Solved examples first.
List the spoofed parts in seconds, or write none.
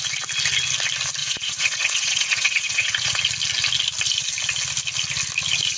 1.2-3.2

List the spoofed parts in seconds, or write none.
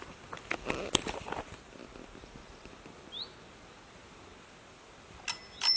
none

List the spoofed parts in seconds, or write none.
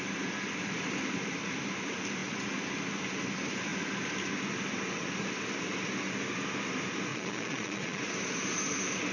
7.1-8.0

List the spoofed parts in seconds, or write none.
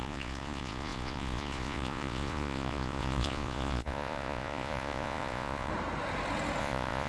0.0-5.7; 6.6-7.1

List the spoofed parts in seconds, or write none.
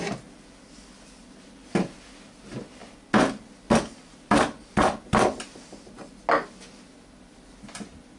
none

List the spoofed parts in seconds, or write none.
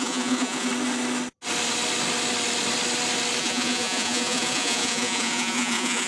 0.0-0.7; 3.4-6.1